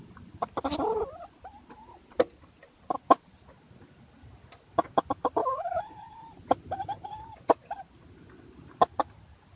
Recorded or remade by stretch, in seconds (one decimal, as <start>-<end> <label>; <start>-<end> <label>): 0.0-5.4 recorded; 5.4-6.2 remade; 6.2-9.6 recorded